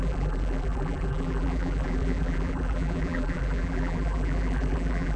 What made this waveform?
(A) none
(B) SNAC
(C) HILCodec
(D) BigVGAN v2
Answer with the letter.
D